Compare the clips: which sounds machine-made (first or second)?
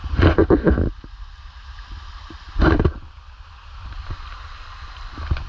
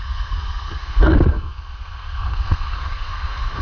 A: second